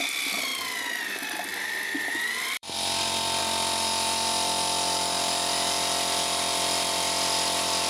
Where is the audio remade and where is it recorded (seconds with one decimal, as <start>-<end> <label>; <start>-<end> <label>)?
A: 0.0-1.5 recorded; 1.5-3.4 remade; 3.4-7.9 recorded